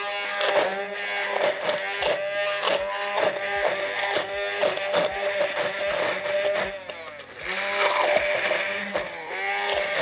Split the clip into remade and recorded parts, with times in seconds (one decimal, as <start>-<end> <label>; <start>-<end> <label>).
0.0-10.0 recorded